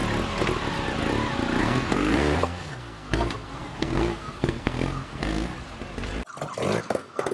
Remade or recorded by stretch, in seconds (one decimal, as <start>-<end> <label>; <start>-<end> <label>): 0.0-1.6 recorded; 1.6-5.5 remade; 5.5-6.8 recorded; 6.8-7.3 remade